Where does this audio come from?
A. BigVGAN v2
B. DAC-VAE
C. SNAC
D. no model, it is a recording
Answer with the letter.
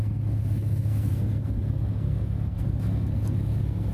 C